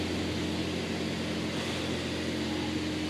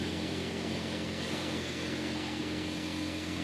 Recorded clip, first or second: first